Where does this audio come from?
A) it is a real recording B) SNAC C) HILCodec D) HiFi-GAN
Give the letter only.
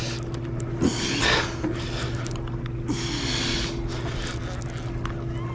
A